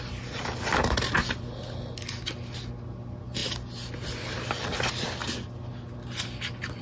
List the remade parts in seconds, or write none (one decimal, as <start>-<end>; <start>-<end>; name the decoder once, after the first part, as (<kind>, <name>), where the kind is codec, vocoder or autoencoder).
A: none